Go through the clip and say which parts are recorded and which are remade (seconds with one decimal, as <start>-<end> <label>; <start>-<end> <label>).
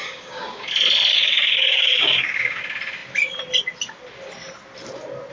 0.0-0.7 remade; 0.7-1.1 recorded; 1.1-2.6 remade; 2.6-5.3 recorded